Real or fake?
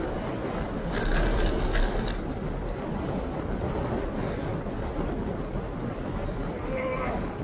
real